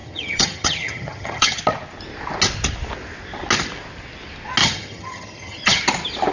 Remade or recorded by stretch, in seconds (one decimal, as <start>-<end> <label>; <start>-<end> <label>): 0.0-1.6 remade; 1.6-4.6 recorded; 4.6-5.8 remade; 5.8-6.3 recorded